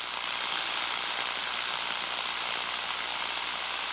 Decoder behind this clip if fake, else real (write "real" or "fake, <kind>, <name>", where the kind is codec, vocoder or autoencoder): real